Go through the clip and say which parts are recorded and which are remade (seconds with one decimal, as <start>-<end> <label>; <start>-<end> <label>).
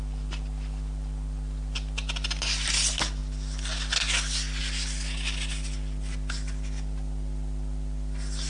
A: 0.0-8.5 recorded